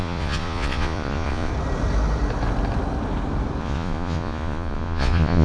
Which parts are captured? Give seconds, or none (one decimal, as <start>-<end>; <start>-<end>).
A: 1.5-3.6